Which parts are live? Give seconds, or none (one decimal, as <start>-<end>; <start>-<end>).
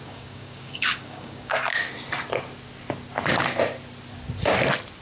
1.7-5.0